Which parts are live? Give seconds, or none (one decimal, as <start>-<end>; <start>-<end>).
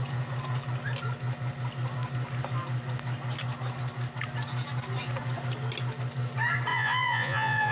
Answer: 0.0-6.7